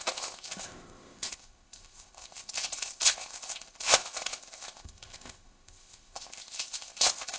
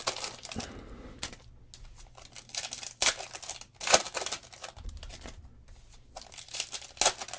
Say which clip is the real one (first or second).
second